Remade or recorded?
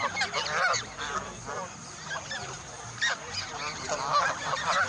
recorded